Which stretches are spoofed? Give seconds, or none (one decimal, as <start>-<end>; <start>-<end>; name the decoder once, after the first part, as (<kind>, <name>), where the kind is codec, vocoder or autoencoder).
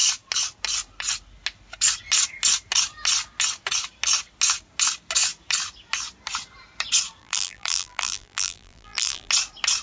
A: 7.2-9.3 (vocoder, BigVGAN v2)